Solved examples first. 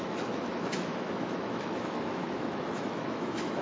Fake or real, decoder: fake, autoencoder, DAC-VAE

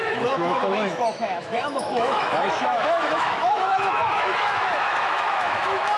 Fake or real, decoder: fake, autoencoder, DAC-VAE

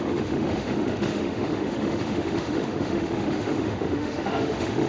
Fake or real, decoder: fake, autoencoder, DAC-VAE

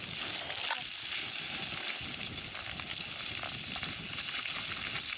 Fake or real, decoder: real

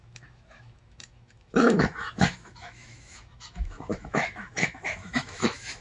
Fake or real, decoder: fake, autoencoder, DAC-VAE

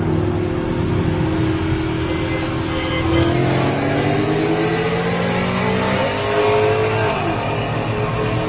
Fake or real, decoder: real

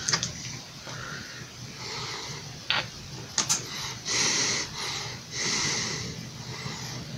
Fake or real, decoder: real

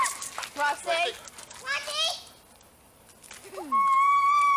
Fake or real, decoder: real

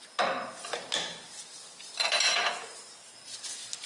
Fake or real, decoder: real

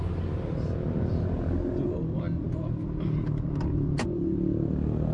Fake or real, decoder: real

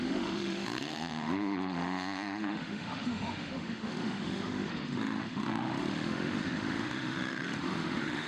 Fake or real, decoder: fake, autoencoder, DAC-VAE